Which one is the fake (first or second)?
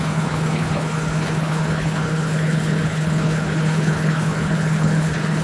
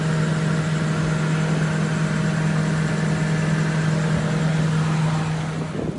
first